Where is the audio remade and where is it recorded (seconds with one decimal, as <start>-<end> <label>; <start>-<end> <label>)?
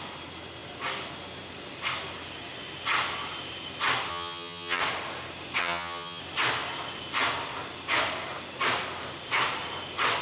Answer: 0.0-4.1 recorded; 4.1-4.8 remade; 4.8-5.6 recorded; 5.6-6.2 remade; 6.2-10.2 recorded